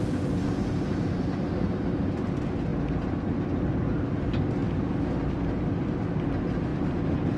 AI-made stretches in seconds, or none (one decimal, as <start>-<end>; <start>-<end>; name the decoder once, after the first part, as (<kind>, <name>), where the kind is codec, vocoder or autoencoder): none